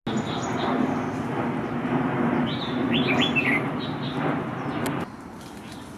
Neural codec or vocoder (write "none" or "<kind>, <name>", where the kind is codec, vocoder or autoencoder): none